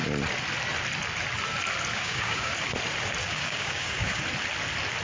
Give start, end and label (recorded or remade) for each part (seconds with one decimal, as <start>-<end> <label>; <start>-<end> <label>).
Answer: 0.0-1.9 recorded; 1.9-2.5 remade; 2.5-3.2 recorded; 3.2-4.2 remade; 4.2-5.0 recorded